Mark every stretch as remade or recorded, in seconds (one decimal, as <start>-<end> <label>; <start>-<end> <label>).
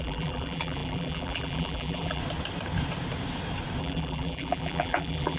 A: 0.0-2.2 remade; 2.2-3.8 recorded; 3.8-5.4 remade